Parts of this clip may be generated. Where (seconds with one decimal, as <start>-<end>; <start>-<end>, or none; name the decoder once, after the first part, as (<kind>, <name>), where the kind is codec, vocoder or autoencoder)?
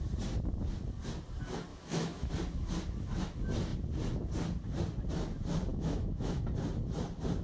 1.7-2.3 (autoencoder, DAC-VAE); 5.7-6.4